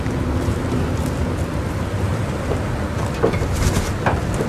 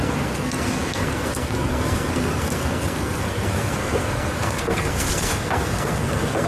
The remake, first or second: second